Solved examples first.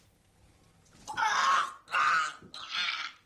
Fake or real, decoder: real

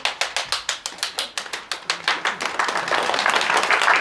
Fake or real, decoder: real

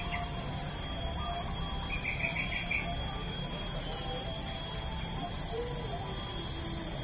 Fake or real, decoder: real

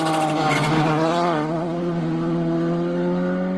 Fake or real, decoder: real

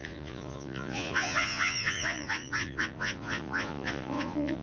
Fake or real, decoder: fake, vocoder, Vocos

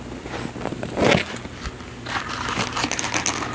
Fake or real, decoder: real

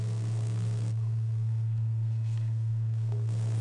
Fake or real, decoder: fake, codec, SNAC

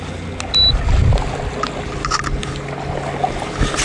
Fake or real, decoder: real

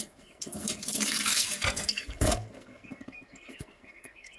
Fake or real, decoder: fake, codec, SNAC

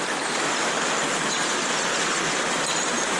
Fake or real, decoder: real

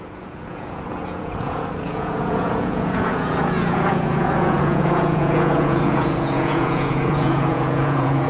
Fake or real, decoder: fake, vocoder, Vocos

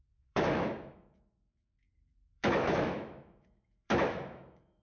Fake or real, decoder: fake, autoencoder, DAC-VAE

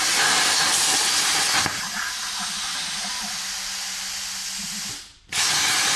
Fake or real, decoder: real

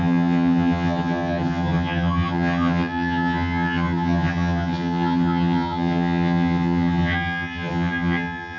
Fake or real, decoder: fake, vocoder, HiFi-GAN